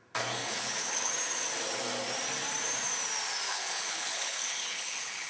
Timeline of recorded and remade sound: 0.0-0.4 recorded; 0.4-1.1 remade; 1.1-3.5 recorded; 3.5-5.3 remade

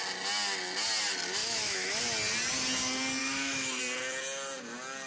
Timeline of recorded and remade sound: 0.0-1.4 recorded; 1.4-2.0 remade; 2.0-3.2 recorded; 3.2-3.8 remade; 3.8-5.1 recorded

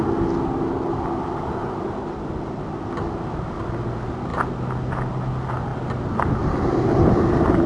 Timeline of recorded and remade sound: 0.0-1.6 recorded; 1.6-2.6 remade; 2.6-7.7 recorded